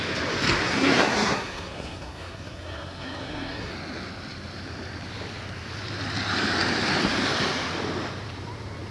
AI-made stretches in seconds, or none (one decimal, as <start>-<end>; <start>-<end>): 0.6-3.7

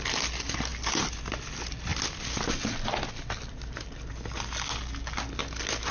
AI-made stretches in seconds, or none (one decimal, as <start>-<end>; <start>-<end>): none

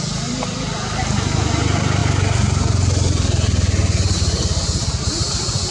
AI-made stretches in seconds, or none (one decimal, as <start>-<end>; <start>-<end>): none

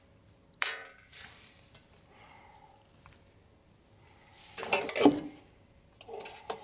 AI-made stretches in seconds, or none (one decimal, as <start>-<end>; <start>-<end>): none

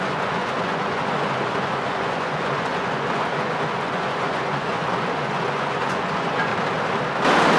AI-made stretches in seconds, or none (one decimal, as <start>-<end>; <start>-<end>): 0.0-6.5

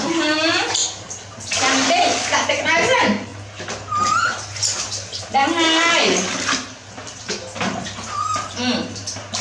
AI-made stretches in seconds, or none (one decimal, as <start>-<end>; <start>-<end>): 0.0-0.8; 2.6-3.3; 8.3-9.4

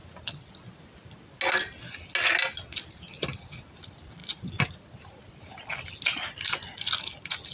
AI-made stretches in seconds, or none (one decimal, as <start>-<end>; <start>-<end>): none

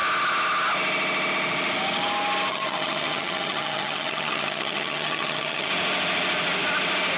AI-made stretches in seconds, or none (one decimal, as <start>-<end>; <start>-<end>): 2.5-5.7